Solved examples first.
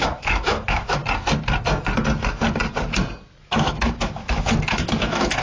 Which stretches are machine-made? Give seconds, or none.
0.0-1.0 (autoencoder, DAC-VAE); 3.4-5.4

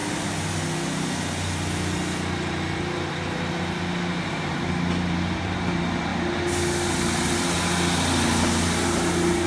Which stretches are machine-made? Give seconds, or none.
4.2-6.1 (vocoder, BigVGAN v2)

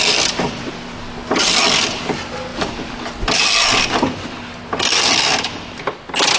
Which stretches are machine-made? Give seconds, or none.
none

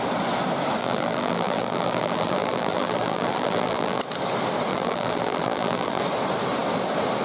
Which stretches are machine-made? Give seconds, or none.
0.8-4.0 (vocoder, BigVGAN v2); 4.7-6.0

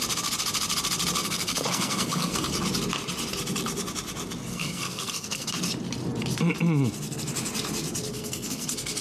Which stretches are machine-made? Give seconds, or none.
1.2-2.5 (codec, SNAC); 4.5-5.5; 8.1-9.0

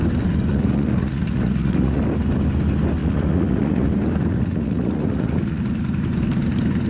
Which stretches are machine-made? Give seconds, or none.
0.5-2.0 (vocoder, Vocos); 3.0-3.9; 4.3-5.6

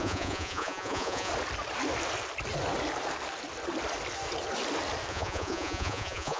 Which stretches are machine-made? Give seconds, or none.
0.0-1.3 (vocoder, Vocos); 5.1-6.4